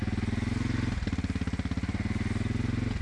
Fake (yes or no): no